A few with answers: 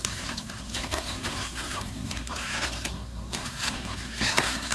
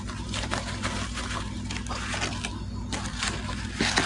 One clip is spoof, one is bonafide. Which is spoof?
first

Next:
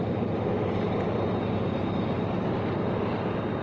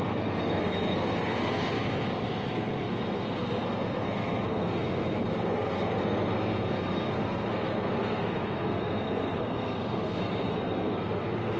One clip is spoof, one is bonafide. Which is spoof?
second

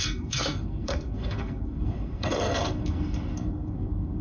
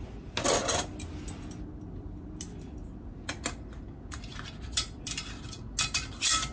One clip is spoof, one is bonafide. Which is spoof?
first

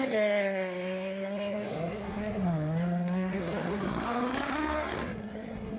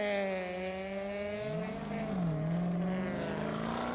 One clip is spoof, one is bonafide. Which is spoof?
first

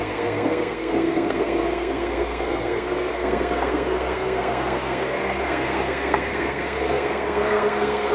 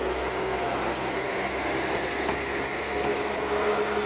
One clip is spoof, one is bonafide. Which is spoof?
first